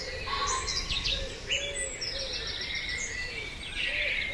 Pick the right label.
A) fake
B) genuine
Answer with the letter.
B